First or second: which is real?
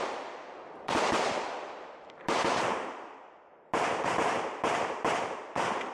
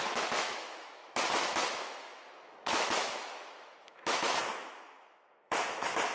first